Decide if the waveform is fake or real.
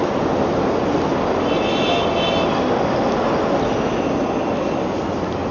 real